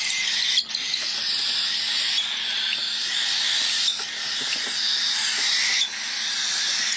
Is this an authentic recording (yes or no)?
no